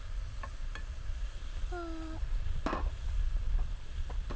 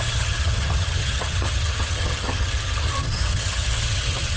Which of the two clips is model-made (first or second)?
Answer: second